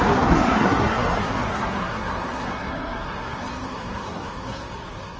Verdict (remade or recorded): remade